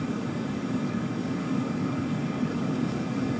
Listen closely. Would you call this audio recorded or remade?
remade